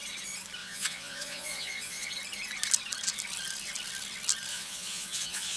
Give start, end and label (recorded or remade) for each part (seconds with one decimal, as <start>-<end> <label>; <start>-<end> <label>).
0.0-0.6 recorded; 0.6-2.1 remade; 2.1-4.5 recorded; 4.5-5.6 remade